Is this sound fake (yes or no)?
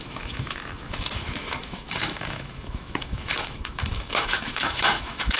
yes